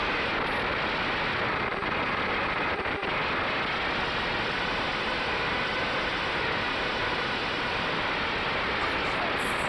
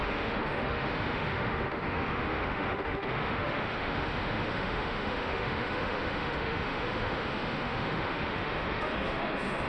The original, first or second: first